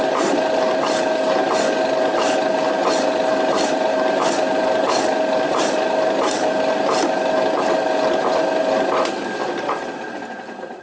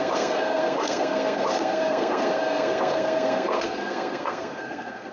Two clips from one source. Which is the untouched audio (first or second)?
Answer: first